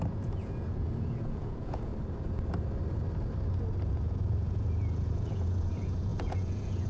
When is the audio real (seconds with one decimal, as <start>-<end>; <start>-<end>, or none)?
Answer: 1.9-3.9